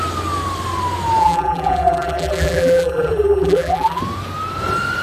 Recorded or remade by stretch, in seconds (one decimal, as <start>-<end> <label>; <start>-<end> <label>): 0.0-1.2 recorded; 1.2-4.0 remade; 4.0-5.0 recorded